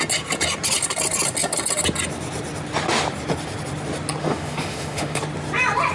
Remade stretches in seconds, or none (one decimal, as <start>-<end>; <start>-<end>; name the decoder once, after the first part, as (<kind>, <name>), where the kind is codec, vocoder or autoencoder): 4.2-5.2 (autoencoder, DAC-VAE)